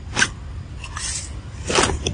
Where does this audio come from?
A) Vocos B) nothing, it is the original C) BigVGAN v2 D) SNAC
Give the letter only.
B